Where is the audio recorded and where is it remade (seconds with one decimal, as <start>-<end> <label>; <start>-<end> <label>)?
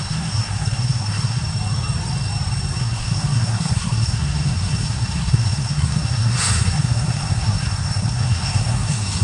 0.0-1.4 remade; 1.4-2.8 recorded; 2.8-9.2 remade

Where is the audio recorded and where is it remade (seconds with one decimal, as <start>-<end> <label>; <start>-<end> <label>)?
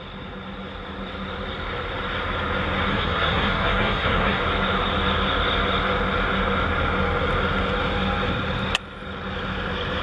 0.0-2.9 recorded; 2.9-4.4 remade; 4.4-10.0 recorded